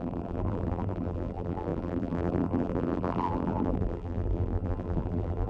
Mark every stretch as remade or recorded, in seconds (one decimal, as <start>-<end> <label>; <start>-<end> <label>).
0.0-5.5 remade